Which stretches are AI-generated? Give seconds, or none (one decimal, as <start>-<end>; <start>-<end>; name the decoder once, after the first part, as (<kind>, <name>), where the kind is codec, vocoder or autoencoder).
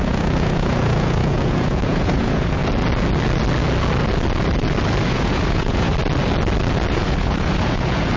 0.0-2.6 (vocoder, Vocos); 5.1-5.9; 6.9-8.2